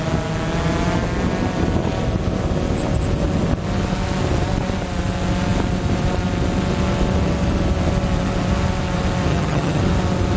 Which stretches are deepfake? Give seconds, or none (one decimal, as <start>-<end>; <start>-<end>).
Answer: 9.3-9.8